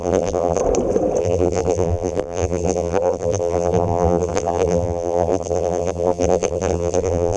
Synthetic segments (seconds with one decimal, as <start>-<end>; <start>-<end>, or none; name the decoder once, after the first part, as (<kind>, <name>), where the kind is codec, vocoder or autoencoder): 0.0-0.6 (vocoder, BigVGAN v2); 1.2-7.4